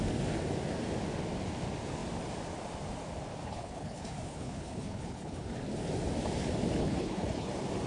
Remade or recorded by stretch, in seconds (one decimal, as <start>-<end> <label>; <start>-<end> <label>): 0.0-3.4 recorded; 3.4-5.4 remade; 5.4-6.8 recorded; 6.8-7.5 remade; 7.5-7.9 recorded